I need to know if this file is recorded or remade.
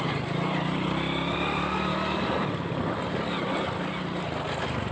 recorded